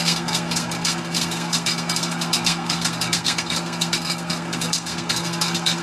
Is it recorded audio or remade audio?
remade